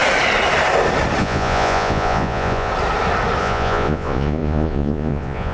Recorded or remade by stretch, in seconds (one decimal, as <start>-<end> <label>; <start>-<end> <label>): 0.0-1.2 recorded; 1.2-2.7 remade; 2.7-3.4 recorded; 3.4-5.5 remade